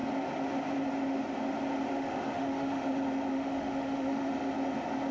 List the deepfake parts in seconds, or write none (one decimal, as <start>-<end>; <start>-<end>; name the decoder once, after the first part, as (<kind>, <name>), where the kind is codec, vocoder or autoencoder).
1.9-2.9 (autoencoder, DAC-VAE); 3.3-4.3